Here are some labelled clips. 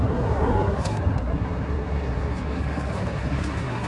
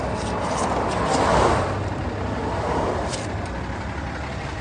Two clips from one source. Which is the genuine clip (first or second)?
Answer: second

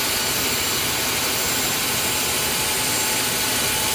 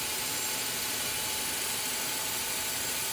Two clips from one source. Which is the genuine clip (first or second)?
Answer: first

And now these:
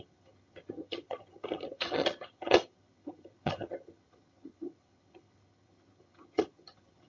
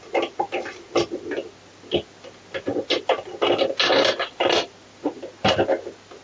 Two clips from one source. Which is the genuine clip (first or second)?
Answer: second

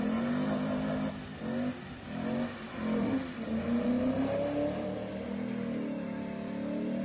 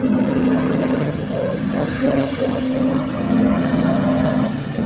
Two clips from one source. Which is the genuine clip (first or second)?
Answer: first